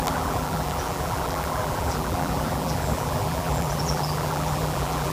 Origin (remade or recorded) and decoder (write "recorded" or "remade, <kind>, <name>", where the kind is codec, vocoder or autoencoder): remade, vocoder, BigVGAN v2